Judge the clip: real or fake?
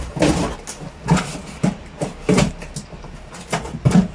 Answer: real